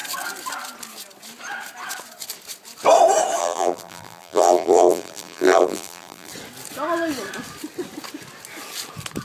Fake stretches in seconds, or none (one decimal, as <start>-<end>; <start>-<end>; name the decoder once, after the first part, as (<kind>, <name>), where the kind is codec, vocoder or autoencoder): 3.4-6.3 (vocoder, BigVGAN v2)